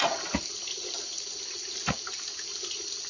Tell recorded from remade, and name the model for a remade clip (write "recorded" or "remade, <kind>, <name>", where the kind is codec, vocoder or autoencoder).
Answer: recorded